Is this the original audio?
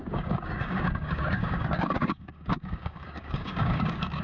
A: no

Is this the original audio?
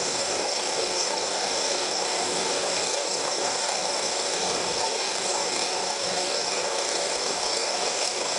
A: no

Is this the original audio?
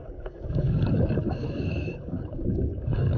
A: no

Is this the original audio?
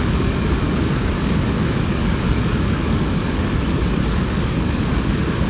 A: no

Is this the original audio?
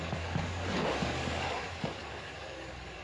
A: no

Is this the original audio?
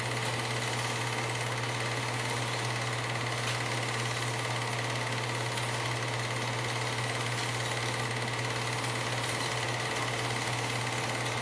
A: yes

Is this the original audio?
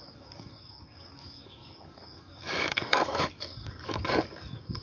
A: no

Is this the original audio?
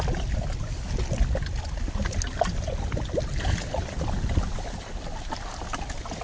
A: yes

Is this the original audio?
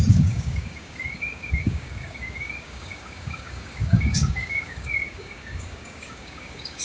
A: no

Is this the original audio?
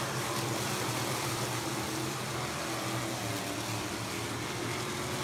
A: yes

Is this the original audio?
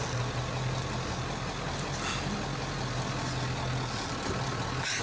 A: yes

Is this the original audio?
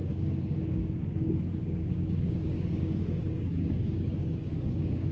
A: no